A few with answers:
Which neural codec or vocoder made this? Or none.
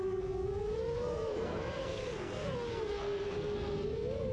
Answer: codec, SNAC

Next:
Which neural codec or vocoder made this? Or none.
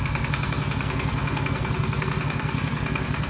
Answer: codec, SNAC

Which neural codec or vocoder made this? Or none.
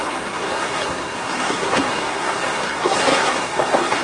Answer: codec, SNAC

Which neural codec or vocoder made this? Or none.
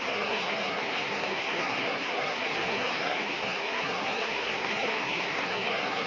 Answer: codec, SNAC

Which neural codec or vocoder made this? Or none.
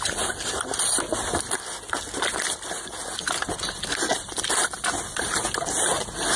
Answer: none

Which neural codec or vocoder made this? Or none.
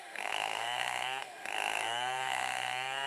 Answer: codec, SNAC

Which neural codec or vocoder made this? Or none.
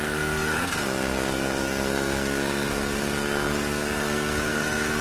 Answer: codec, SNAC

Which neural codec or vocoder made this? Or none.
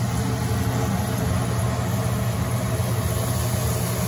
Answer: none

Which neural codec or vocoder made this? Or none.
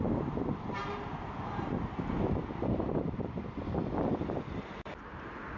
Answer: none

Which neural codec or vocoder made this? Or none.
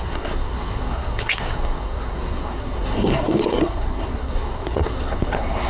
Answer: codec, SNAC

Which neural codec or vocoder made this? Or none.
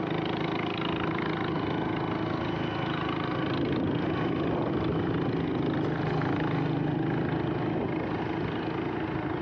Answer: none